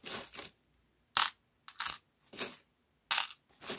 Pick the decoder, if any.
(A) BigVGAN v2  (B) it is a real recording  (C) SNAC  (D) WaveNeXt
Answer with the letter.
B